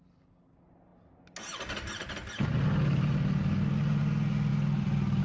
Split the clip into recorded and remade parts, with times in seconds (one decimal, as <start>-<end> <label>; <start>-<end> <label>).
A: 0.0-5.2 recorded